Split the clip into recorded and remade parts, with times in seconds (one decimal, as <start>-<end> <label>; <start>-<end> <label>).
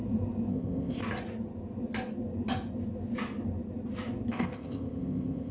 0.0-0.5 recorded; 0.5-1.0 remade; 1.0-4.3 recorded; 4.3-5.5 remade